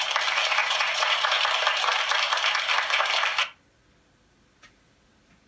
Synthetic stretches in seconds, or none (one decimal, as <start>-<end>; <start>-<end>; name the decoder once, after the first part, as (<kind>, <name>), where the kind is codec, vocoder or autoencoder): 0.6-1.3 (vocoder, Vocos)